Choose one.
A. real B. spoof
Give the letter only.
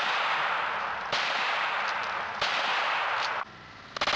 A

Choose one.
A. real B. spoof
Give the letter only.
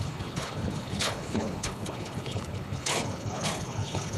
B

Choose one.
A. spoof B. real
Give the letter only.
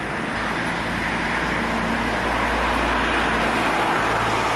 B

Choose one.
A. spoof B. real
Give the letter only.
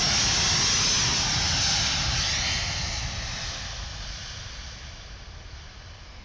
B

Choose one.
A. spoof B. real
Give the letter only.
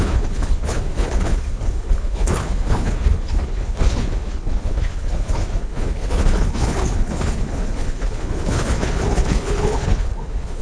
A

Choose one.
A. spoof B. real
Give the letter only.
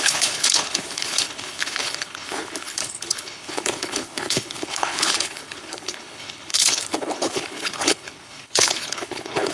A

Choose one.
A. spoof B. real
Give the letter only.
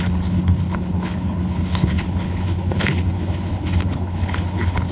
A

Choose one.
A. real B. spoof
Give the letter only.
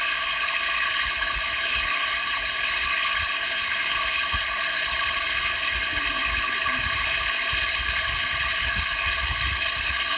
B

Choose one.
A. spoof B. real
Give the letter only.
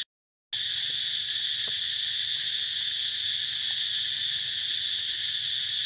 B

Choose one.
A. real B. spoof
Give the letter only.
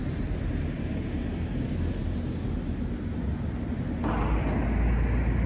A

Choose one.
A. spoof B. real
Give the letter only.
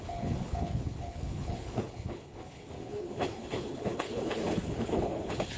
A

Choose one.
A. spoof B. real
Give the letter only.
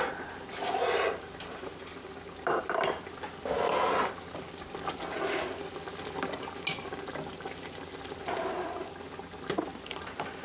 B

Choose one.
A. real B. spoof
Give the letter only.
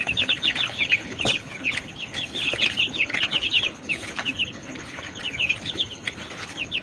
B